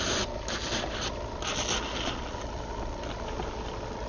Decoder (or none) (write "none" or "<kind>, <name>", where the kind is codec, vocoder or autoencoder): none